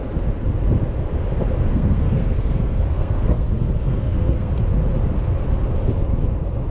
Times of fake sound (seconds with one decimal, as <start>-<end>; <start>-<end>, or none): 1.7-4.5